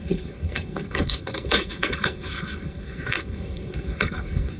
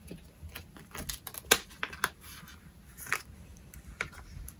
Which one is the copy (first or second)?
first